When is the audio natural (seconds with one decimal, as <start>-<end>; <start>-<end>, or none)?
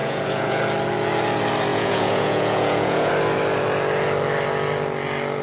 0.6-1.7; 3.1-5.4